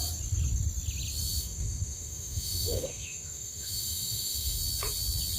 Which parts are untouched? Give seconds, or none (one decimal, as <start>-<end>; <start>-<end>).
0.0-1.4; 4.6-5.4